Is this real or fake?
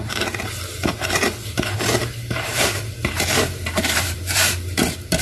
fake